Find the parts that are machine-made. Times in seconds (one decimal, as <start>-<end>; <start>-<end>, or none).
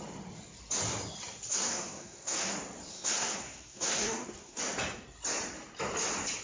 1.5-2.5; 2.9-4.6